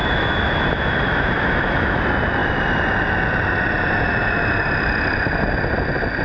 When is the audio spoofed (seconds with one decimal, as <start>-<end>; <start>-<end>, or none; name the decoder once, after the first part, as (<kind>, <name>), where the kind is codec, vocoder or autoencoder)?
0.0-2.0 (autoencoder, DAC-VAE)